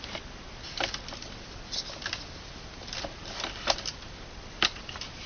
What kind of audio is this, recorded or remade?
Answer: recorded